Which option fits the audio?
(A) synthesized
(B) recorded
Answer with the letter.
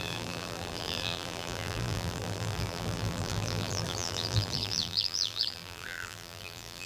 A